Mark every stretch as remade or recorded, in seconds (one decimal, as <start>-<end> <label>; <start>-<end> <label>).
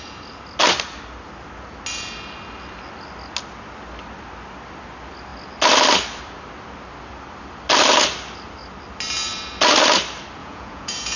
0.0-10.4 recorded; 10.4-11.2 remade